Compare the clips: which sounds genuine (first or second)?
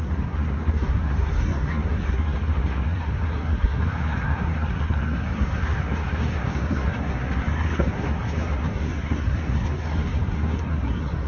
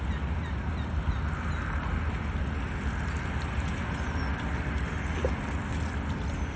second